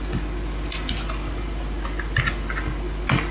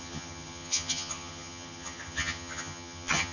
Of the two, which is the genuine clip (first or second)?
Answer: first